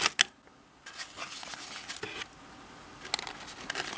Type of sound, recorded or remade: recorded